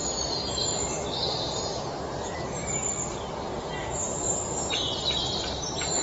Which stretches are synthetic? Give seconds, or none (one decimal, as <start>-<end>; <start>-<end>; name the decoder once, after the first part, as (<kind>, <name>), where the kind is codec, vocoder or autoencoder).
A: 0.0-6.0 (vocoder, BigVGAN v2)